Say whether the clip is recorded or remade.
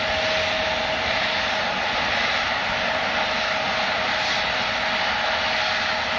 recorded